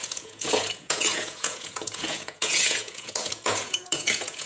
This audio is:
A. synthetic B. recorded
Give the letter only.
A